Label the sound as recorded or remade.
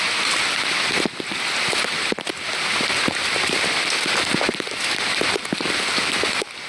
recorded